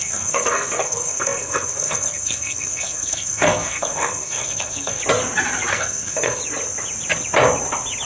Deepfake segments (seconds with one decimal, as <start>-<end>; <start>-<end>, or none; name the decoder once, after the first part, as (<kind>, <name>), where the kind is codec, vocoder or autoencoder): 0.0-5.0 (codec, SNAC); 5.7-6.4